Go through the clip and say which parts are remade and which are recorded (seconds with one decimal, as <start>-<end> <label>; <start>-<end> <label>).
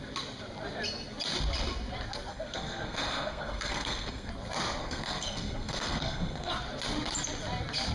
0.0-2.3 recorded; 2.3-4.3 remade; 4.3-4.8 recorded; 4.8-6.5 remade; 6.5-7.9 recorded